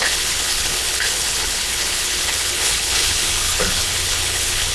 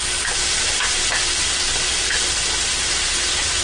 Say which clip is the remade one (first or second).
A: first